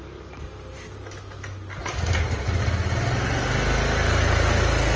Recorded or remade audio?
recorded